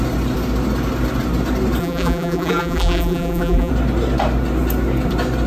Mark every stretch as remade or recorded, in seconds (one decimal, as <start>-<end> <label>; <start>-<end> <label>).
0.0-1.8 recorded; 1.8-3.7 remade; 3.7-5.5 recorded